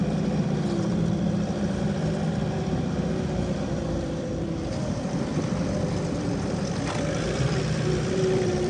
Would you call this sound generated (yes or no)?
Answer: yes